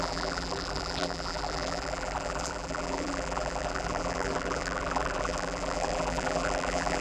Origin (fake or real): fake